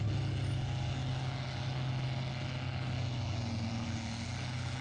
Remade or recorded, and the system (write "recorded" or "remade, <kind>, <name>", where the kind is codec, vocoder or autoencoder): recorded